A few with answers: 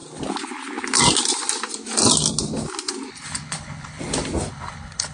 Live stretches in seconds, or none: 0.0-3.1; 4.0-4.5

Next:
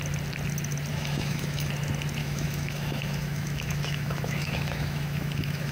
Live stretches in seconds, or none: 0.0-0.9; 1.7-2.2

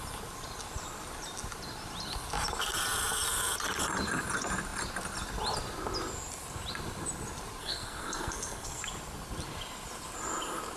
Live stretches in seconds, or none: 0.0-7.6; 8.8-10.8

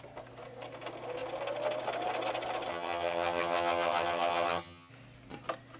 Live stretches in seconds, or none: 0.0-2.7; 4.9-5.8

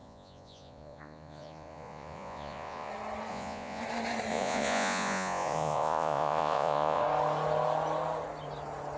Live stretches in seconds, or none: 2.9-3.3; 3.8-4.3; 7.0-9.0

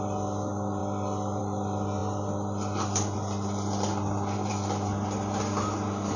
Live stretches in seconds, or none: 0.0-6.2

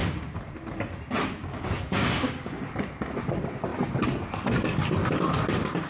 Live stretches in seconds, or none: 0.0-1.4; 2.7-5.9